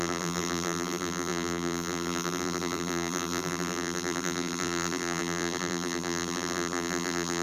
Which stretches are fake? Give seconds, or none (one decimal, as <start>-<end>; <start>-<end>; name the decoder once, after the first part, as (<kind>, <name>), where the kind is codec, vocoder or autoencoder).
0.0-7.4 (vocoder, BigVGAN v2)